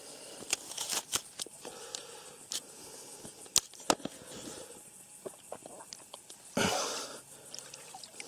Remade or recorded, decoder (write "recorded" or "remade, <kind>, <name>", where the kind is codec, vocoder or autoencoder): recorded